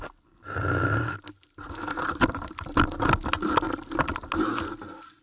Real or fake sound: real